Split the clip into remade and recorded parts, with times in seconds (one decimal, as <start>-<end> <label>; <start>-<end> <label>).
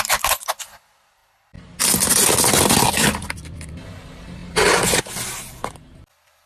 0.0-6.5 recorded